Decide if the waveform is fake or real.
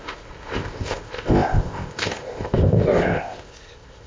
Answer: fake